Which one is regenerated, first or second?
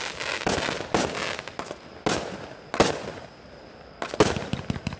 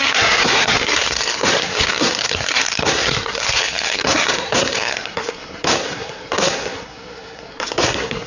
second